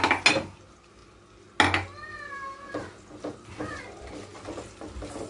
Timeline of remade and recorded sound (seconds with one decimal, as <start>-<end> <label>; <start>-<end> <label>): 0.0-5.3 recorded